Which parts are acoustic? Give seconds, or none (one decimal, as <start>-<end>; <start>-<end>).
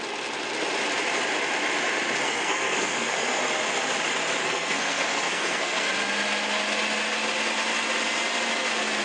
0.0-2.2; 3.4-4.4; 5.9-9.0